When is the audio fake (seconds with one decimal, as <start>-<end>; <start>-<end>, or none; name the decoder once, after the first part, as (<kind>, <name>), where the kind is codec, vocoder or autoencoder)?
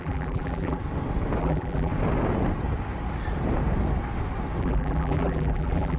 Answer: 0.0-0.8 (vocoder, BigVGAN v2); 1.4-1.9; 4.6-6.0